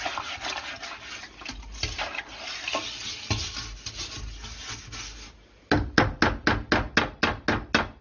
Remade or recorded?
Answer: recorded